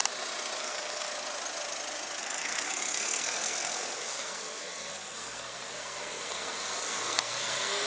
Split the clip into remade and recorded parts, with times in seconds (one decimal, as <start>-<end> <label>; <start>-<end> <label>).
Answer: 0.0-0.6 recorded; 0.6-1.1 remade; 1.1-2.2 recorded; 2.2-7.9 remade